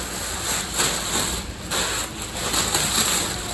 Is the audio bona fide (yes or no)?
no